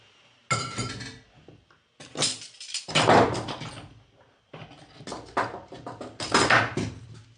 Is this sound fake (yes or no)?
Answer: no